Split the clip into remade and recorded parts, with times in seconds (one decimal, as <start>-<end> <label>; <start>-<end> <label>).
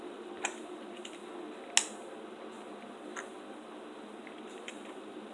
0.0-1.2 remade; 1.2-4.4 recorded; 4.4-5.3 remade